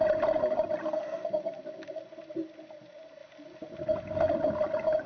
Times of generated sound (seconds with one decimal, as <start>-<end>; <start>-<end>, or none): none